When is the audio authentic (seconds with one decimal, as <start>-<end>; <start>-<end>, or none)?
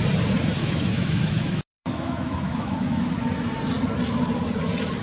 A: 0.0-0.6; 3.1-5.0